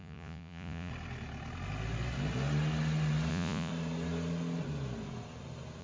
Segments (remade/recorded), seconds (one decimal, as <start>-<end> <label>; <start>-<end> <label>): 0.0-0.9 remade; 0.9-3.3 recorded; 3.3-3.7 remade; 3.7-5.8 recorded